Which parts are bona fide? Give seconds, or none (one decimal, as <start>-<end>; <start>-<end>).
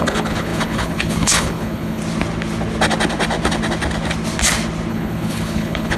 2.0-4.9